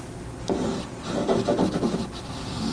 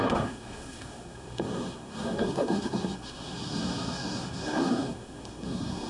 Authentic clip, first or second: first